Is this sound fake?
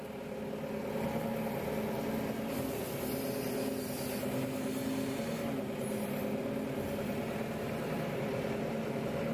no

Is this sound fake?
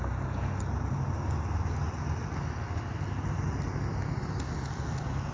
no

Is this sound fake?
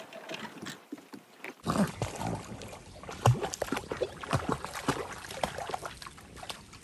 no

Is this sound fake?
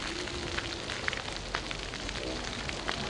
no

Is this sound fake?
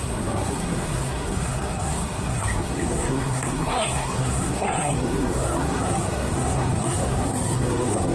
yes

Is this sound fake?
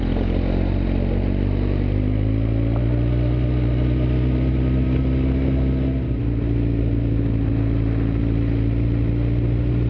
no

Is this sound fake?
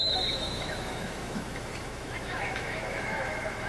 yes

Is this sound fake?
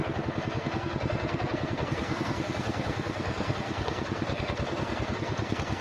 yes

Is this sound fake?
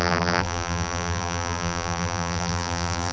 yes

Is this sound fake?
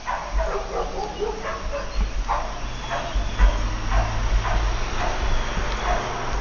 no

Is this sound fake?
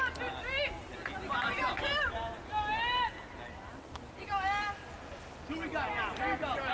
no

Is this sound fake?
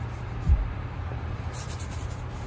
yes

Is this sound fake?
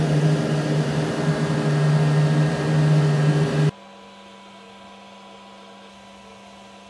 no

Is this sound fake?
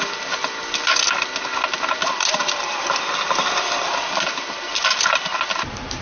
no